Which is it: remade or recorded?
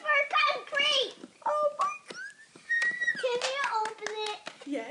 recorded